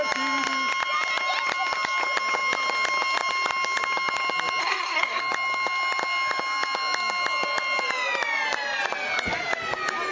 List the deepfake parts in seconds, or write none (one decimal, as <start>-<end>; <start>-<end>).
4.6-5.2